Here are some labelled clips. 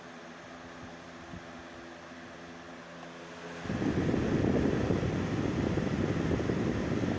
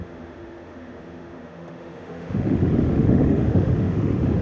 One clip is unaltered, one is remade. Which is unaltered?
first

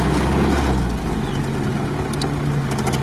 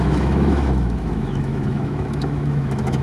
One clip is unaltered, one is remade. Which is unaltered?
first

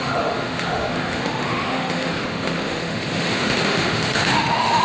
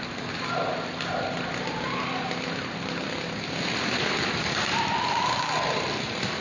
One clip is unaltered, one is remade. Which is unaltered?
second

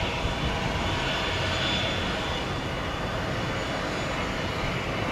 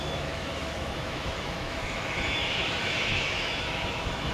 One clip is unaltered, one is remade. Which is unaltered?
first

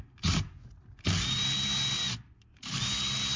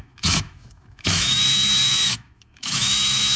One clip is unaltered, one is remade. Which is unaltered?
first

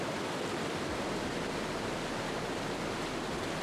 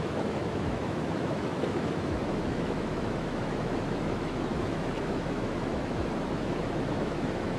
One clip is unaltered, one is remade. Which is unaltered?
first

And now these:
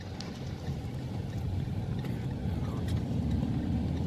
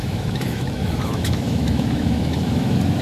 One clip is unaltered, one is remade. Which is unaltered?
first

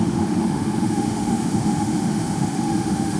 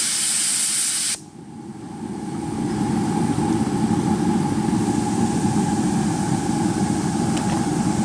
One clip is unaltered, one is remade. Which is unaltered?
second